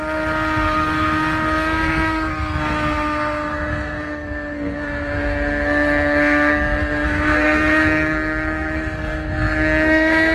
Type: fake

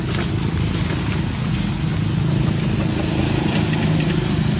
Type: real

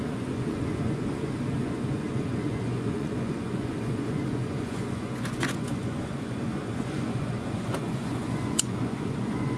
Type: fake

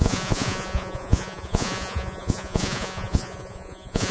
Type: fake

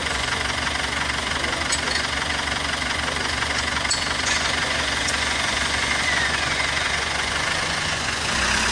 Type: fake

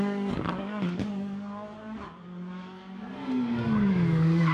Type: fake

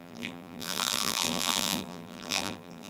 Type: fake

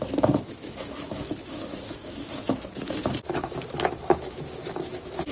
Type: fake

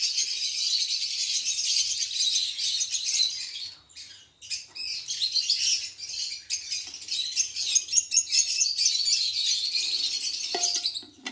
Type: real